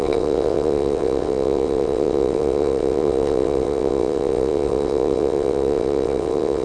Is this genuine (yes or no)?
no